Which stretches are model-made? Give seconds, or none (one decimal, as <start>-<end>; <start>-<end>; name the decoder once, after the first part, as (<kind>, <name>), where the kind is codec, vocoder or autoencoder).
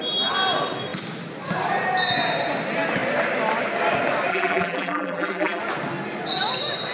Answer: 4.3-5.6 (vocoder, BigVGAN v2)